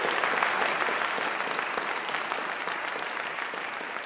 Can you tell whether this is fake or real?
real